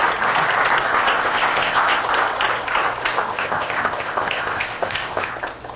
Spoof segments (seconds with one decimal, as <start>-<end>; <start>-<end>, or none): 0.9-2.0; 3.3-5.3